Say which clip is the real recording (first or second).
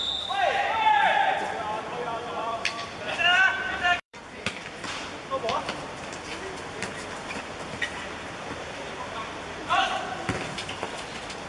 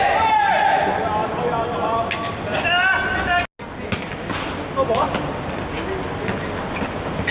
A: second